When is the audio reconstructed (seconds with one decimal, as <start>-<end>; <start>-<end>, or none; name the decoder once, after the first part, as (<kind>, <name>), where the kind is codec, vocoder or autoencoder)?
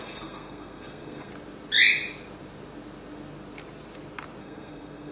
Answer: 0.0-1.3 (codec, SNAC); 4.4-5.1